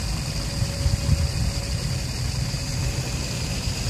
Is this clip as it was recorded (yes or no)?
yes